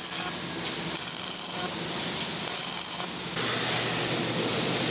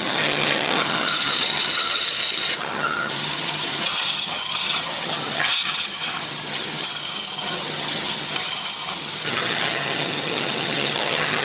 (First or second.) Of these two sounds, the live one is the first